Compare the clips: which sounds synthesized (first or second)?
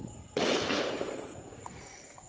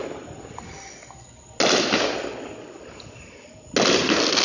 first